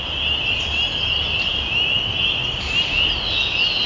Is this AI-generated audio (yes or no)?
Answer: no